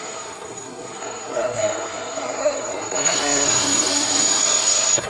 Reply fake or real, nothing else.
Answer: fake